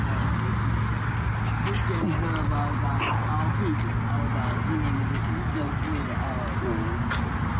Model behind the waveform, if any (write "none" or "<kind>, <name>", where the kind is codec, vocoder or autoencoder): none